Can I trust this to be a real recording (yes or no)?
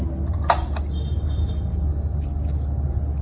yes